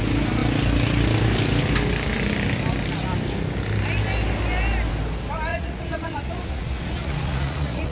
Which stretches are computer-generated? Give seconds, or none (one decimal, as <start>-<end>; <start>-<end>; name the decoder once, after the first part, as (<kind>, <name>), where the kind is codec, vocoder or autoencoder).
5.5-7.9 (vocoder, Vocos)